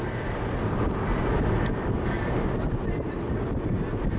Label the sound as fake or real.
real